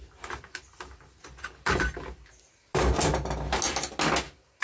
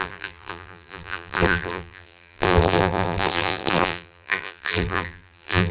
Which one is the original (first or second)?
first